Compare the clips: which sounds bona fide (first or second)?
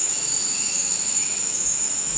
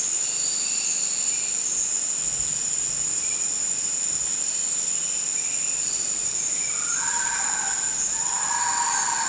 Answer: second